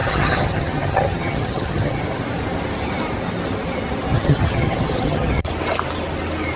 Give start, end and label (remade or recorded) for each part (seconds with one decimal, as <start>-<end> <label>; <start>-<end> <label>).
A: 0.0-2.0 remade; 2.0-4.1 recorded; 4.1-5.5 remade; 5.5-6.6 recorded